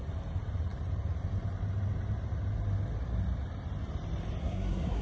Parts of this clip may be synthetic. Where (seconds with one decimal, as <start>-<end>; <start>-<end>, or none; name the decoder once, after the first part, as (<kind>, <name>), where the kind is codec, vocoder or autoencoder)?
4.4-5.0 (codec, SNAC)